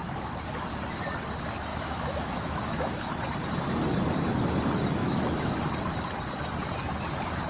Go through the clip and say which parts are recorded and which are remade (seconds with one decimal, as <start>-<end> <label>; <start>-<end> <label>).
0.0-1.7 recorded; 1.7-3.1 remade; 3.1-5.0 recorded; 5.0-5.6 remade; 5.6-7.5 recorded